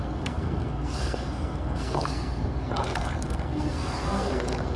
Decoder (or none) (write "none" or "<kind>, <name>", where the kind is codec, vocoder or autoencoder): codec, SNAC